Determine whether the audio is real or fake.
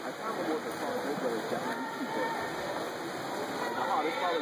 real